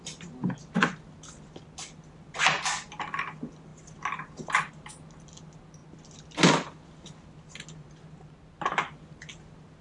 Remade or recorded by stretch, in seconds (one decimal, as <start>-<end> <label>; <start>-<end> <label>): 0.0-9.8 recorded